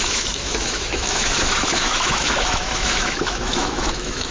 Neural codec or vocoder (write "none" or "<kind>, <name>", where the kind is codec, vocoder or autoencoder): autoencoder, DAC-VAE